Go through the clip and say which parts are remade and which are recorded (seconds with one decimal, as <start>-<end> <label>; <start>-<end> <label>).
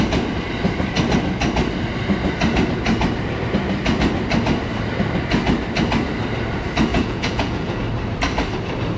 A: 0.0-6.9 recorded; 6.9-7.8 remade; 7.8-9.0 recorded